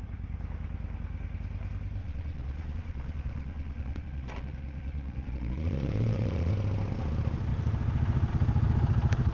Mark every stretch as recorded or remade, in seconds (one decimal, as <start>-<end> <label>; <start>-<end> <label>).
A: 0.0-2.0 recorded; 2.0-6.5 remade; 6.5-9.3 recorded